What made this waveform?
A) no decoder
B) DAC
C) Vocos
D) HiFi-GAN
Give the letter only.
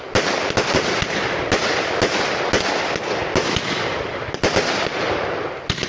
A